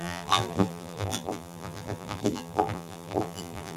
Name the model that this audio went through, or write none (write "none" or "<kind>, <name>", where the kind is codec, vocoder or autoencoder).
vocoder, BigVGAN v2